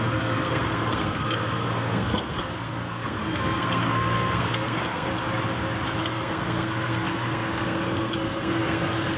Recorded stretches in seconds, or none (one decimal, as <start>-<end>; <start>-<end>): 5.1-6.0